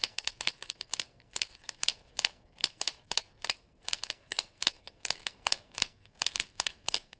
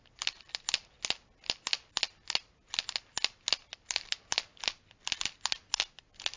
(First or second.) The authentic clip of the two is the second